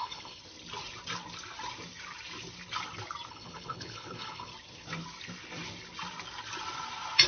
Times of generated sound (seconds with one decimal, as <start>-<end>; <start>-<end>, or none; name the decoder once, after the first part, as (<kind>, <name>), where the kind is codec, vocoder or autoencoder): 0.0-0.4 (codec, HILCodec); 3.3-4.5